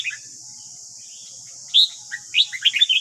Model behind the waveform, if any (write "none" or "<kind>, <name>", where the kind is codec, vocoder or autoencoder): none